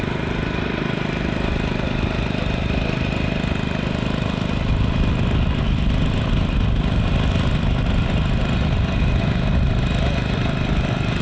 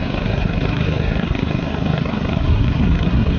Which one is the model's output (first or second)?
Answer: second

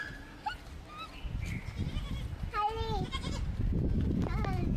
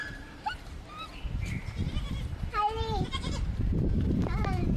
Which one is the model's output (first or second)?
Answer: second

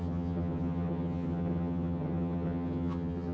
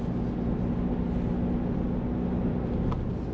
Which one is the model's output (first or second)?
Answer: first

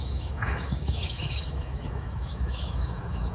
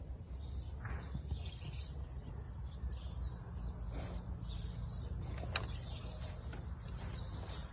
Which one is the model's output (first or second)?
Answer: first